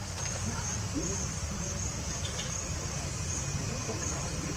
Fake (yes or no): no